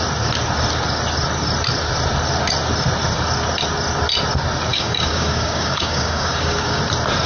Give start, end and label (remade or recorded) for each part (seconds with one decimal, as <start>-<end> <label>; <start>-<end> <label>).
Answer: 0.0-4.7 recorded; 4.7-6.8 remade; 6.8-7.3 recorded